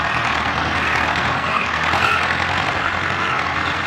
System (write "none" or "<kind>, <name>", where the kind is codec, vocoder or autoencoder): codec, SNAC